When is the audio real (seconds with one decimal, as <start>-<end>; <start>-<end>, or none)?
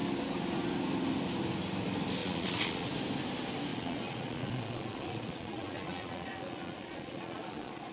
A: 0.0-2.2; 2.9-3.7